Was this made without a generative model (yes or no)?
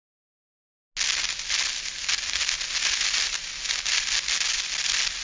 yes